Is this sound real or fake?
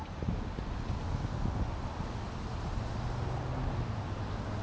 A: real